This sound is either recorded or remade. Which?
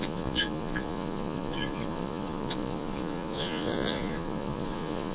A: remade